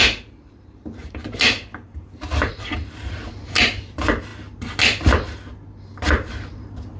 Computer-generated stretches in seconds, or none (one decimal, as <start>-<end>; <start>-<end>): 0.0-4.3; 5.8-7.0